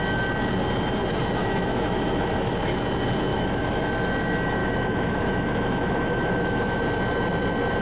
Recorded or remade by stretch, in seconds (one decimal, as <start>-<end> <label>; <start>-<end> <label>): 0.0-1.4 recorded; 1.4-2.5 remade; 2.5-3.3 recorded; 3.3-3.8 remade; 3.8-4.6 recorded; 4.6-6.8 remade; 6.8-7.8 recorded